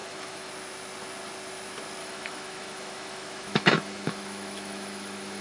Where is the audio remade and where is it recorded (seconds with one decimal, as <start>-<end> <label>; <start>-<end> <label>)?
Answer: 0.0-0.5 remade; 0.5-2.0 recorded; 2.0-5.4 remade